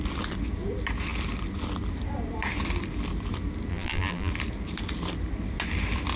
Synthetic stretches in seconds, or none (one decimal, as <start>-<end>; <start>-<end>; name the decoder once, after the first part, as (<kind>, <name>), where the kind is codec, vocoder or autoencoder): 3.7-4.3 (vocoder, BigVGAN v2)